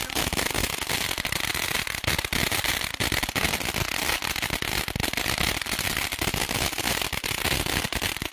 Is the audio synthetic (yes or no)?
no